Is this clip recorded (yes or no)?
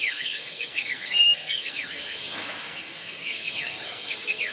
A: no